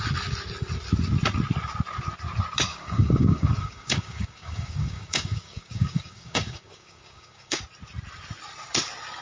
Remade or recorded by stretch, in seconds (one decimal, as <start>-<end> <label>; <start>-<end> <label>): 0.0-2.7 recorded; 2.7-7.6 remade; 7.6-9.2 recorded